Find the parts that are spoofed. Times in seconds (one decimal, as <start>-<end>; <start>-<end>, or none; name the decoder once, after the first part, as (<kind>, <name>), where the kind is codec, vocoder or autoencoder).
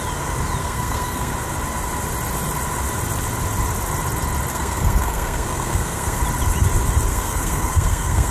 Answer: 0.6-1.3 (codec, SNAC); 4.5-6.2; 7.1-8.3